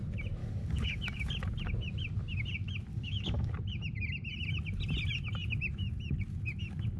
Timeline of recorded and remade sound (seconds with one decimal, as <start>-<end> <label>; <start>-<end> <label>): 0.0-0.4 recorded; 0.4-1.3 remade; 1.3-2.9 recorded; 2.9-3.5 remade; 3.5-7.0 recorded